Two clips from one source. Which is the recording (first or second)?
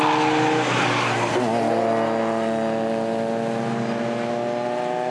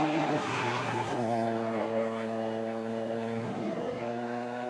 first